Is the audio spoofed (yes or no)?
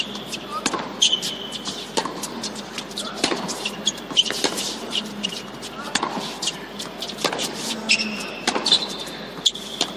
yes